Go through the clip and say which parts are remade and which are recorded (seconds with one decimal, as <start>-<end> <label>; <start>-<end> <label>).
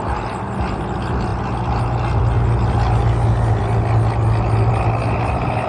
0.0-5.7 recorded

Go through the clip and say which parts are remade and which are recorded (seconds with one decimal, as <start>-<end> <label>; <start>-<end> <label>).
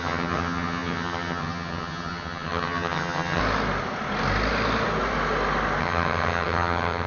0.0-3.4 remade; 3.4-5.8 recorded; 5.8-7.1 remade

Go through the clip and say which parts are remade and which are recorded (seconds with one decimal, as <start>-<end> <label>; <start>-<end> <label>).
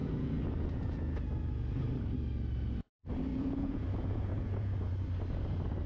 0.0-1.8 remade; 1.8-3.3 recorded; 3.3-4.9 remade; 4.9-5.9 recorded